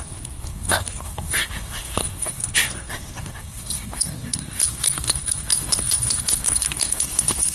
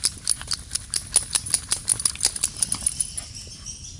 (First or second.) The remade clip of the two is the first